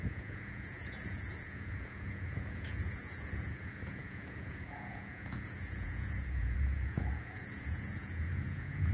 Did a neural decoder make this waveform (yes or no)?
yes